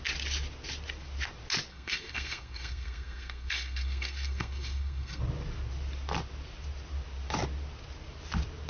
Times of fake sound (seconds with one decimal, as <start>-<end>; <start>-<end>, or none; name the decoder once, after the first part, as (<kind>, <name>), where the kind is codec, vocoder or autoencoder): 1.7-5.2 (codec, SNAC)